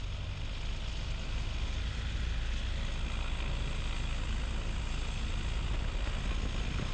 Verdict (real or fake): real